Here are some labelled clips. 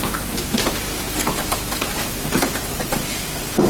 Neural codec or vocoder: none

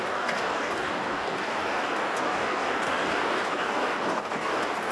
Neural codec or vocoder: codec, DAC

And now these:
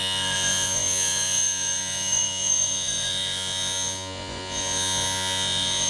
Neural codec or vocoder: vocoder, Vocos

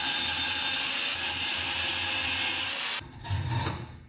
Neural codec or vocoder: none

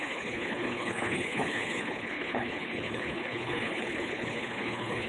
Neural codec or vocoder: codec, HILCodec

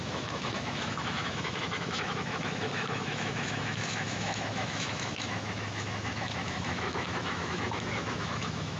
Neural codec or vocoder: autoencoder, DAC-VAE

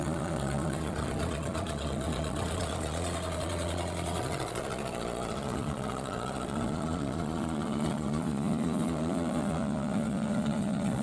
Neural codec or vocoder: vocoder, Vocos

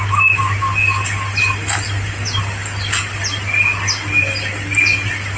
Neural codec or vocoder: none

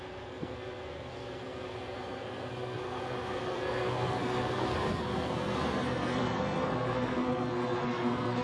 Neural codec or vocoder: codec, SNAC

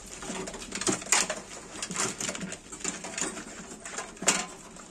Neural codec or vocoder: none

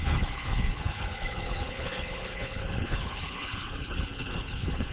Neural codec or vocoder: codec, HILCodec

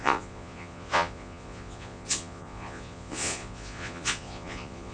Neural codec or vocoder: vocoder, Vocos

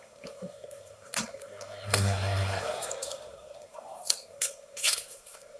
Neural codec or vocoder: codec, SNAC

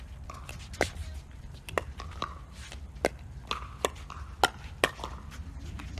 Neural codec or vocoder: none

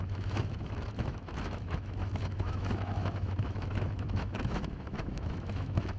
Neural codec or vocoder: autoencoder, DAC-VAE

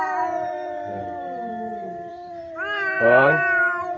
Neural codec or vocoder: vocoder, BigVGAN v2